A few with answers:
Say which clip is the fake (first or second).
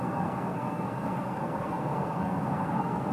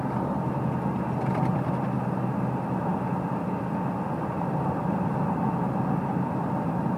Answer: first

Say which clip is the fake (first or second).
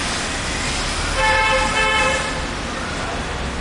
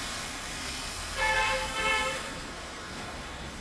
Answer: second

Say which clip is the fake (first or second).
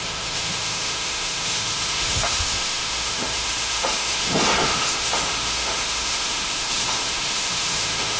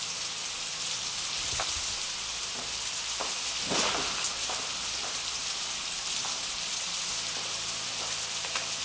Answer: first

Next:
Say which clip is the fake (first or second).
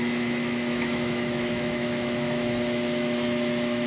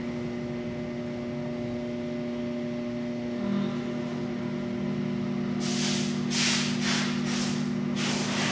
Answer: first